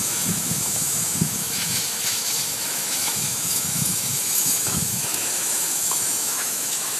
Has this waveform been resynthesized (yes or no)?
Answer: yes